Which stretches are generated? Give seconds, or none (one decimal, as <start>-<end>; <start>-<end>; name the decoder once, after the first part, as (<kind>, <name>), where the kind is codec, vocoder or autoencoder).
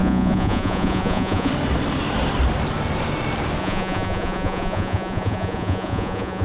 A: 0.0-1.5 (vocoder, Vocos); 3.6-6.4